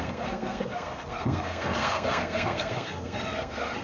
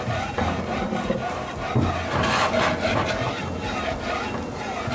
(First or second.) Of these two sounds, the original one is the second